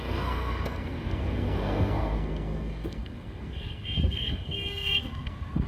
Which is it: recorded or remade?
remade